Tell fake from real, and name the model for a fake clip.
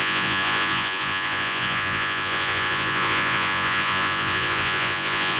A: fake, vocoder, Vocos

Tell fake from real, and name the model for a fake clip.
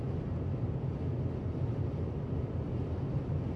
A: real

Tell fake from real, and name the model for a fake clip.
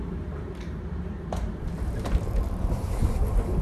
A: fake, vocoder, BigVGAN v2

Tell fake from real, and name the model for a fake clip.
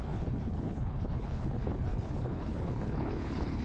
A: fake, codec, HILCodec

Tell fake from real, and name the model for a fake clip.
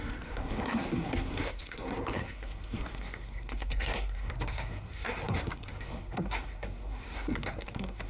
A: fake, codec, SNAC